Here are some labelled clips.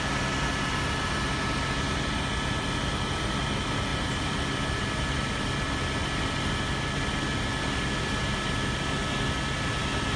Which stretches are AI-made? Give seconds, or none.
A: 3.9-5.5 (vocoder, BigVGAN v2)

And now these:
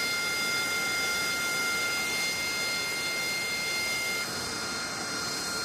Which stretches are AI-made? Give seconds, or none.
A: none

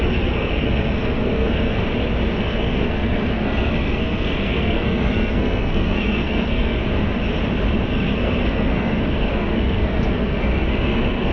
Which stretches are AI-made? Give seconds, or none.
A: 0.0-1.8 (codec, SNAC); 2.4-6.8; 7.9-11.3

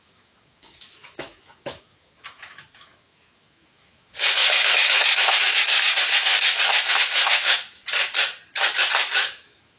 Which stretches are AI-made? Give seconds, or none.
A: 0.0-6.3 (autoencoder, DAC-VAE); 6.9-7.8; 9.0-9.8

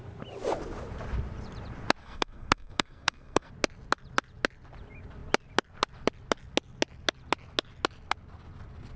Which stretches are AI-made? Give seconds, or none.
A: 2.0-3.5 (codec, SNAC)

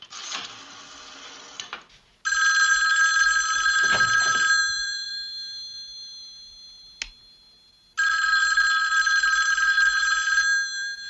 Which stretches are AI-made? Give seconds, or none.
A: 4.6-5.1 (vocoder, BigVGAN v2)

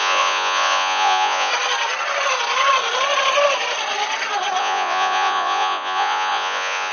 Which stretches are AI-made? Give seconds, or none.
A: 0.0-1.5 (vocoder, Vocos); 4.6-6.9